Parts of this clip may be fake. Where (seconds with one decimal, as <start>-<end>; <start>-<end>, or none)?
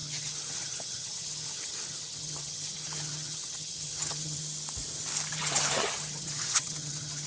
0.0-4.4; 5.3-7.3